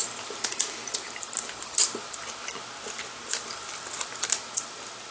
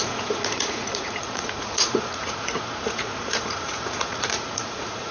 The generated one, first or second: second